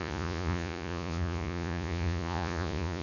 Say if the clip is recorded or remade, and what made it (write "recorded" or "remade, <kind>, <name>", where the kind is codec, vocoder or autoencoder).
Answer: remade, vocoder, Vocos